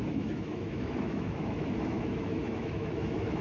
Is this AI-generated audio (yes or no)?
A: yes